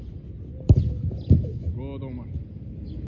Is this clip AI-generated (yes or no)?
no